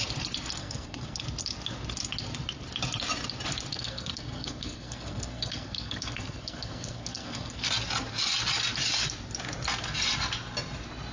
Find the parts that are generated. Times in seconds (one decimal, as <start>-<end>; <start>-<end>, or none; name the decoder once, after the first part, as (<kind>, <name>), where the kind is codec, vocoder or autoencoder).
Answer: 0.6-1.2 (codec, SNAC); 3.7-7.7